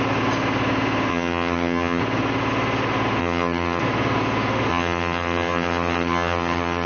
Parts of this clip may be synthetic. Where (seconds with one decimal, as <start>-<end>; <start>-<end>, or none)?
1.1-2.0; 3.2-3.8; 4.7-6.9